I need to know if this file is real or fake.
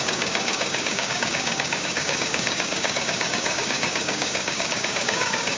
fake